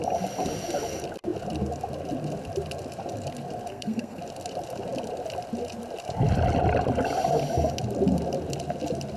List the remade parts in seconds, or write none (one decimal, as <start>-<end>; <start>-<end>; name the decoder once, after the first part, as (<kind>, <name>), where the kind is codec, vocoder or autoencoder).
3.7-4.2 (codec, SNAC)